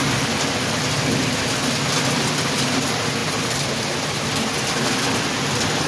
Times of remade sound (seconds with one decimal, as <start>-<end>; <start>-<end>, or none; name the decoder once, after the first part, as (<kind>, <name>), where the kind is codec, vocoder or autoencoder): none